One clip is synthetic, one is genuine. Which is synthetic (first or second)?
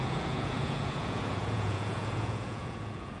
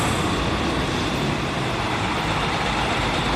first